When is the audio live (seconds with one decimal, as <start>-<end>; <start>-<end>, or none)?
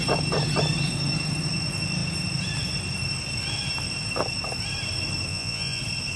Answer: 0.0-5.3; 5.8-6.2